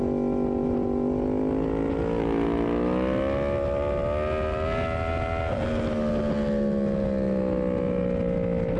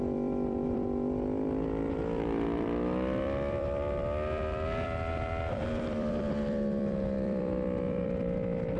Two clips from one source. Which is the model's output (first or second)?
second